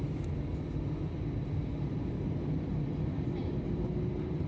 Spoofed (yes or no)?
no